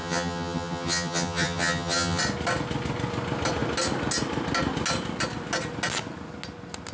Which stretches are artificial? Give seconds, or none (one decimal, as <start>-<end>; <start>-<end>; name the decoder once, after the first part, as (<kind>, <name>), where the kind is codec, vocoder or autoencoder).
0.0-2.2 (vocoder, HiFi-GAN)